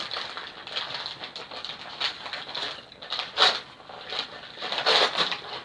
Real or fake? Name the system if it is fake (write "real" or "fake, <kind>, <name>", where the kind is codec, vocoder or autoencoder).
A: real